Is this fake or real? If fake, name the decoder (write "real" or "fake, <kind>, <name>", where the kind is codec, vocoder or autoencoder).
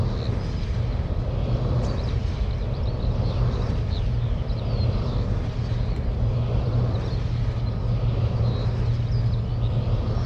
real